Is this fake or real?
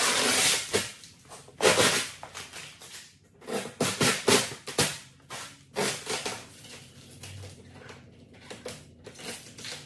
real